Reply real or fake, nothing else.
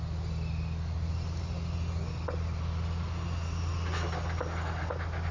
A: real